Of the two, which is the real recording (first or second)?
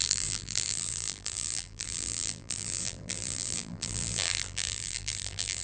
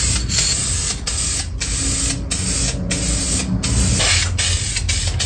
second